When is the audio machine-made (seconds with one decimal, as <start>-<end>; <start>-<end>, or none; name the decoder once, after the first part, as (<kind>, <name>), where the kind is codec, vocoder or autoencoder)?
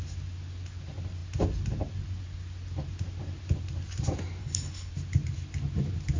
4.4-4.9 (codec, HILCodec)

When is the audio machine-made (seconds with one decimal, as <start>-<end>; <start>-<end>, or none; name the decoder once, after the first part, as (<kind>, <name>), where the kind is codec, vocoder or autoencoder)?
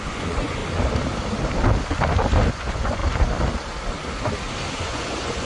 0.0-0.6 (vocoder, Vocos); 2.5-3.0; 4.8-5.4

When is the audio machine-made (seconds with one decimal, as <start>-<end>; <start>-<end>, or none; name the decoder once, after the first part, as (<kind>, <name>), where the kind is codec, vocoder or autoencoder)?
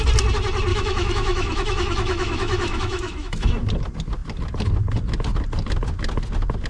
0.7-3.5 (autoencoder, DAC-VAE)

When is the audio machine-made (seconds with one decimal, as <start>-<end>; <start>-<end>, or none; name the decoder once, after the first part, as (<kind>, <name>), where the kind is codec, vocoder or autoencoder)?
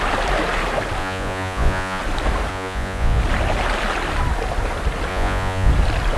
1.0-2.0 (vocoder, Vocos); 2.5-3.2; 5.1-5.7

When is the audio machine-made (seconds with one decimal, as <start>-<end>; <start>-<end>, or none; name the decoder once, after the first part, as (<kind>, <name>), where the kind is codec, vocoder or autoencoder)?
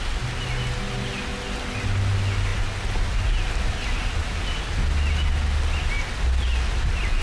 none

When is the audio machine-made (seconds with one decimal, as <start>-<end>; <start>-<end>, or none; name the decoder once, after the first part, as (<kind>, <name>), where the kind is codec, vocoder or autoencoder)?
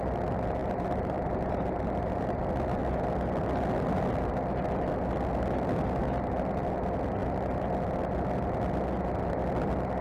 0.6-2.3 (vocoder, BigVGAN v2)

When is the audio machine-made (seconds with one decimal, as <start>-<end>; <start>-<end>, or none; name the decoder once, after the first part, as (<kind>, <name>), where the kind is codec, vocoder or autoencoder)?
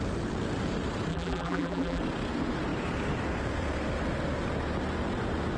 1.1-2.0 (vocoder, BigVGAN v2)